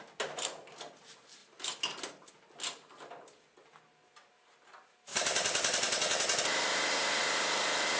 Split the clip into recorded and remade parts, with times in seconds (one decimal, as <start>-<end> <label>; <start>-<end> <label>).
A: 0.0-8.0 recorded